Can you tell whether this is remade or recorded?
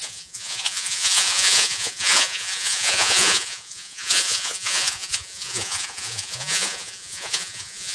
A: remade